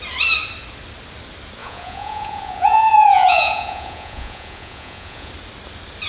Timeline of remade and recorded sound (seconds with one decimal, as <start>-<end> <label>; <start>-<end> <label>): 0.0-1.6 recorded; 1.6-5.3 remade; 5.3-6.1 recorded